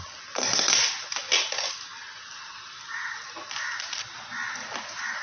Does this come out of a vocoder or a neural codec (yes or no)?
no